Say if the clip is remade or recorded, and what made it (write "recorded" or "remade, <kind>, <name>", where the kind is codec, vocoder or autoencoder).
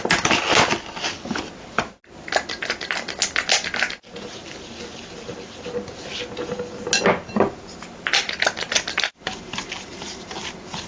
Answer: recorded